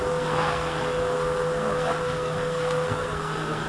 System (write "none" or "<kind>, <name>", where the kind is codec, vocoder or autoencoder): codec, SNAC